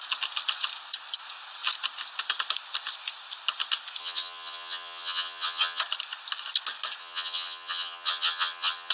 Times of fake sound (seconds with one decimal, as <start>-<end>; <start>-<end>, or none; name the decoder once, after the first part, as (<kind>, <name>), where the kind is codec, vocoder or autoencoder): 4.0-5.8 (vocoder, HiFi-GAN); 7.0-8.9

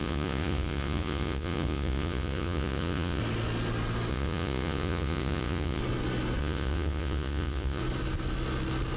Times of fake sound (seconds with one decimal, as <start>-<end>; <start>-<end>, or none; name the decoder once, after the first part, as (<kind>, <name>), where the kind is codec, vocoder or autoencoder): 0.0-3.2 (vocoder, Vocos); 4.1-5.8; 6.4-7.8

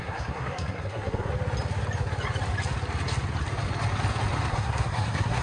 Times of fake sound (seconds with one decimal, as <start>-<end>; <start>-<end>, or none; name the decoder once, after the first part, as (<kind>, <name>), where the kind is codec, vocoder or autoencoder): 0.0-1.3 (codec, SNAC); 4.5-5.4

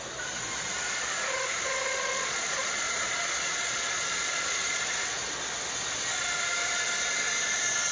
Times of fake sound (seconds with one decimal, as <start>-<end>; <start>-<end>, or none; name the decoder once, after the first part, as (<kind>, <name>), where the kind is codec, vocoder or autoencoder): 1.9-4.8 (vocoder, Vocos)

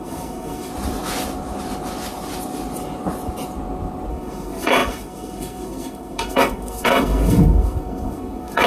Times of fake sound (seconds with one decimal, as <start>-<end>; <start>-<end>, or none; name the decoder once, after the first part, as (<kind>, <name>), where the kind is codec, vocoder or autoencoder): 0.0-0.7 (codec, SNAC); 4.1-8.7

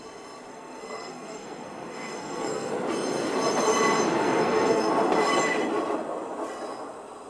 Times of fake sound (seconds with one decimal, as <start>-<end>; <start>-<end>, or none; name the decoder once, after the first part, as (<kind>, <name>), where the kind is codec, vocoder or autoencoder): 0.5-2.7 (codec, SNAC); 4.2-4.9

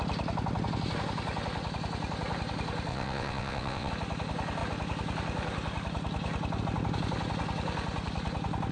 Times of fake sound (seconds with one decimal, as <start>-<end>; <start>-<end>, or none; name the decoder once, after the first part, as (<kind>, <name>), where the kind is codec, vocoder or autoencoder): 2.9-3.9 (vocoder, WaveNeXt)